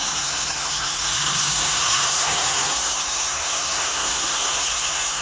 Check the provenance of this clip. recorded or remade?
remade